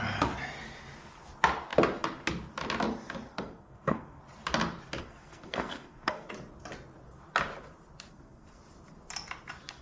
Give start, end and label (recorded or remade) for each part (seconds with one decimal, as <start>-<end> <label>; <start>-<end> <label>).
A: 0.0-3.3 recorded; 3.3-4.2 remade; 4.2-5.0 recorded; 5.0-6.3 remade; 6.3-8.1 recorded; 8.1-8.6 remade; 8.6-9.8 recorded